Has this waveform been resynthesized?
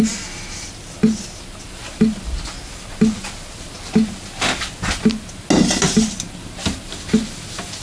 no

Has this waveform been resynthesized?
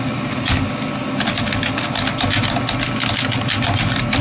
no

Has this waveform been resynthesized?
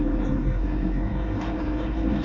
yes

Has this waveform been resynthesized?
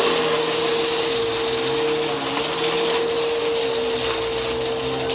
no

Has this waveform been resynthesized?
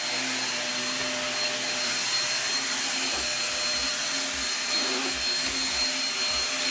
no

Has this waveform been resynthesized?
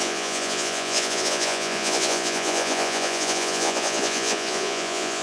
yes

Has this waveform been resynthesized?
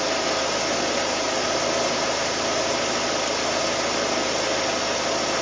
no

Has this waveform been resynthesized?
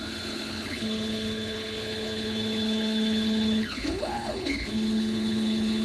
yes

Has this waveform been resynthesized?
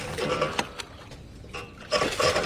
no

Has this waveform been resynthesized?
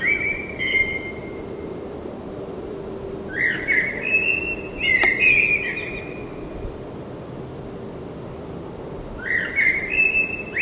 no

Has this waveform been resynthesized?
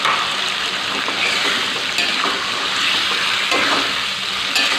no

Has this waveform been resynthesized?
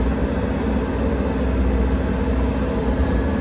no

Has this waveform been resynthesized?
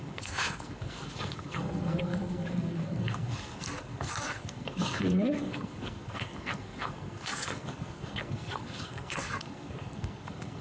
yes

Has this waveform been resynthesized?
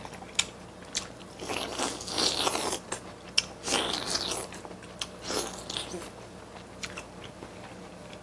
no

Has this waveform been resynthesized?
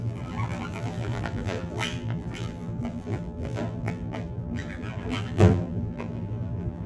yes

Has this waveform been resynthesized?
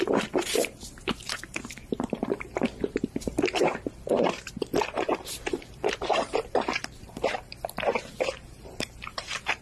yes